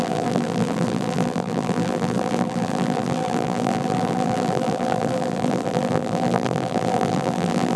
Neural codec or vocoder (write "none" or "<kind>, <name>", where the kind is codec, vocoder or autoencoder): vocoder, BigVGAN v2